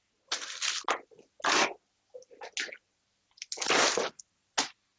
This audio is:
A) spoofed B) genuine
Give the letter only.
B